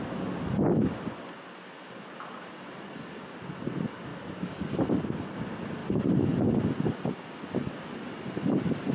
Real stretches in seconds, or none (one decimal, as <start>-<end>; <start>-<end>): 0.0-5.8; 6.5-8.9